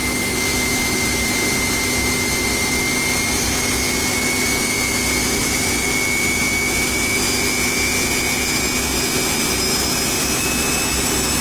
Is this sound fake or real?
real